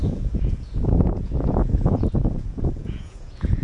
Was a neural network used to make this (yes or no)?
yes